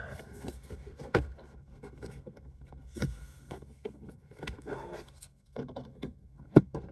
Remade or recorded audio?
remade